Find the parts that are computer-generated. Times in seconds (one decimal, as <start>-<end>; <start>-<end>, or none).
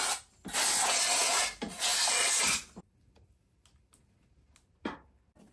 none